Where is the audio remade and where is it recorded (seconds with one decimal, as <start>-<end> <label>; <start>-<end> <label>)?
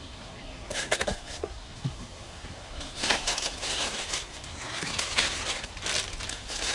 0.0-5.7 remade; 5.7-6.3 recorded; 6.3-6.7 remade